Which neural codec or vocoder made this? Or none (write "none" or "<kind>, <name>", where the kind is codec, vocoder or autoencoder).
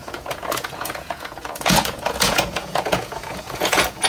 vocoder, Vocos